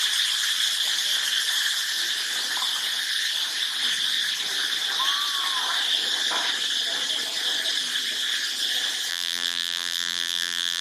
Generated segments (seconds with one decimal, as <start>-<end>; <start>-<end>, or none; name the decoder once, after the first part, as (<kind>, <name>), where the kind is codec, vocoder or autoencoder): 9.1-10.8 (vocoder, BigVGAN v2)